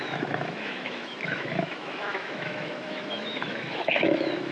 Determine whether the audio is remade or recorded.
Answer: remade